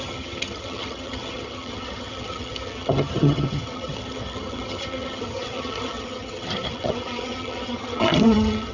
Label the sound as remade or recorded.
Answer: remade